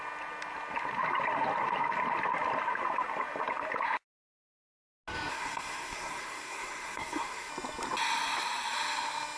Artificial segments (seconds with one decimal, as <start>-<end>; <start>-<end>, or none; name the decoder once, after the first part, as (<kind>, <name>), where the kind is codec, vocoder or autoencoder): 5.3-7.5 (codec, SNAC)